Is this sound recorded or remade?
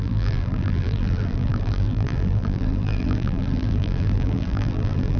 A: remade